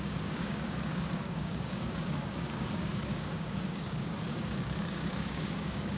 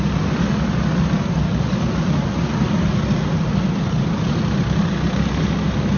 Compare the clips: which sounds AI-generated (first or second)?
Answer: first